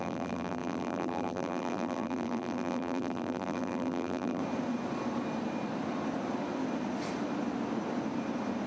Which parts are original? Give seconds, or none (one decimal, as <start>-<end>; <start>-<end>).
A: 4.4-8.7